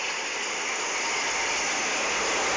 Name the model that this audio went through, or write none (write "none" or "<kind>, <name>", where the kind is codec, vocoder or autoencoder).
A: none